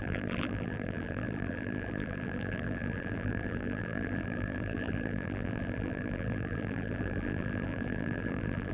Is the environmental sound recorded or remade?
remade